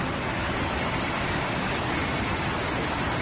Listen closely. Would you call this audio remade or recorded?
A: recorded